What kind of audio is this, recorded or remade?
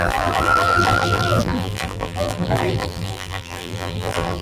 remade